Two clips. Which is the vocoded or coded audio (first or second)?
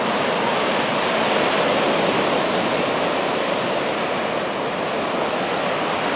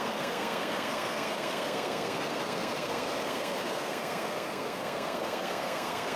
second